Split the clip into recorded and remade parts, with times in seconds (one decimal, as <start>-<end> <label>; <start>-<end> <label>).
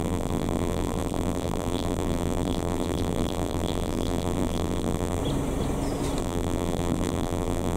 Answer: 0.0-5.2 remade; 5.2-6.2 recorded; 6.2-7.8 remade